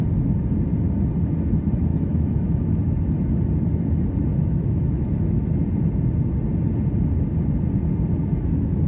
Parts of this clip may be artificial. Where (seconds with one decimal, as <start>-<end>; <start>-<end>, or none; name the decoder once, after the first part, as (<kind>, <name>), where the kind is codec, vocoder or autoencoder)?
1.9-3.0 (autoencoder, DAC-VAE); 4.3-5.4